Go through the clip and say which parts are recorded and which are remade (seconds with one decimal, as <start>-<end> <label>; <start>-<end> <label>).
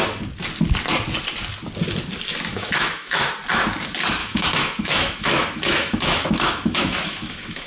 0.0-2.5 recorded; 2.5-3.3 remade; 3.3-4.2 recorded; 4.2-7.7 remade